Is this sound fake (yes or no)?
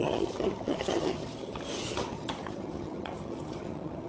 yes